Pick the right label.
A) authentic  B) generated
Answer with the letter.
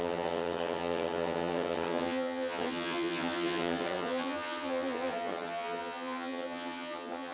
B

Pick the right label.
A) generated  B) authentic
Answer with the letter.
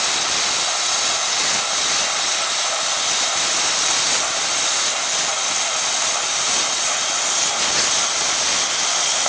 B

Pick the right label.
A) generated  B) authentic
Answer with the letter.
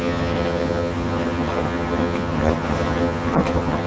A